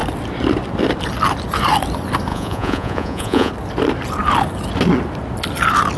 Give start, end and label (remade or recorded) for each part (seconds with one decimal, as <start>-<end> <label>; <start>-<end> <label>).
0.0-2.3 recorded; 2.3-3.5 remade; 3.5-6.0 recorded